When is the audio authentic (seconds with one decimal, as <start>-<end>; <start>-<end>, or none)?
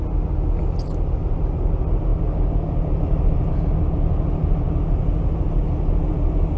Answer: 0.0-6.6